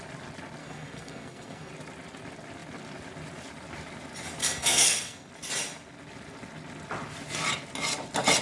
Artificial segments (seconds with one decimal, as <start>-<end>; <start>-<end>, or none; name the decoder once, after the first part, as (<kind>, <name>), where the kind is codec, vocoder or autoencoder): 0.6-1.7 (codec, SNAC); 4.4-5.3